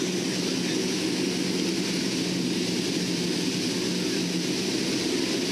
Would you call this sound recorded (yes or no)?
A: yes